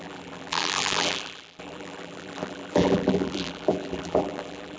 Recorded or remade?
remade